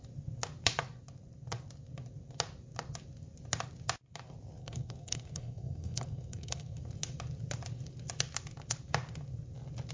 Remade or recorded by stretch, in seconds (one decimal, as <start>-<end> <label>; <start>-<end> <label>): 0.0-4.6 recorded; 4.6-6.8 remade; 6.8-9.9 recorded